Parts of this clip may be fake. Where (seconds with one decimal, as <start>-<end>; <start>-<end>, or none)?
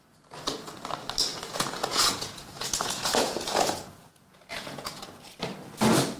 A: 1.3-5.0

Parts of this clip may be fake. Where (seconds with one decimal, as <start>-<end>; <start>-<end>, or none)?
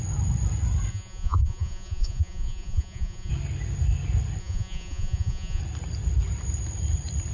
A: 0.9-3.3; 4.4-5.6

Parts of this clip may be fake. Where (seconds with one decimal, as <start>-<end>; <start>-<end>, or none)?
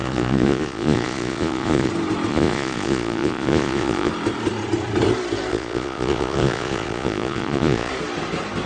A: 0.0-1.9; 2.3-4.1; 5.5-7.9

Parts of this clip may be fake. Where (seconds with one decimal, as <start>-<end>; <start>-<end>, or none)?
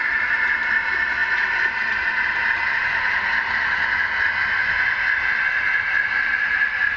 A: none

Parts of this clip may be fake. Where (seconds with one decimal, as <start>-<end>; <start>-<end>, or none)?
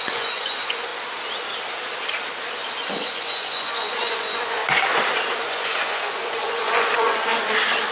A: 0.0-0.9; 2.9-4.6; 5.4-7.3